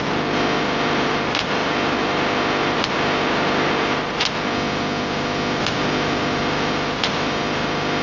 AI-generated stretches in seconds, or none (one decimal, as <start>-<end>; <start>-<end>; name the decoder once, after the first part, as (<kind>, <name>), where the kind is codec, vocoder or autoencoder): none